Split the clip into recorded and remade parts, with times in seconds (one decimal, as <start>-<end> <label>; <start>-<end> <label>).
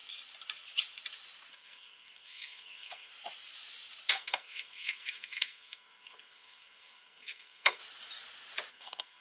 0.0-1.5 recorded; 1.5-3.1 remade; 3.1-4.1 recorded; 4.1-7.8 remade; 7.8-8.7 recorded; 8.7-9.2 remade